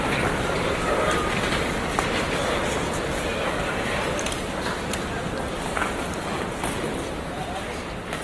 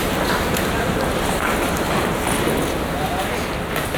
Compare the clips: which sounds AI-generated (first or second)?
first